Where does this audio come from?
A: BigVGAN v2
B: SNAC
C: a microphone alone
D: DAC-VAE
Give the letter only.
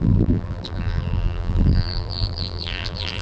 A